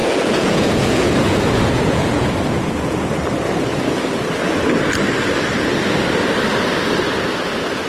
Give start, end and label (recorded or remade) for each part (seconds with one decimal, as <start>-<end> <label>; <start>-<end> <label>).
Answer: 0.0-2.3 remade; 2.3-7.9 recorded